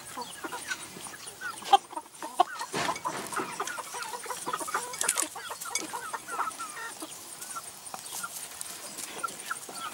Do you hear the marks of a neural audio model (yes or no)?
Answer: no